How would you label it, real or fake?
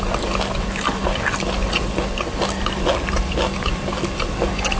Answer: real